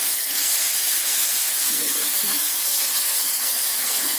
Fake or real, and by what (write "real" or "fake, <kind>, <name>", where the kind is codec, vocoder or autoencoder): fake, codec, SNAC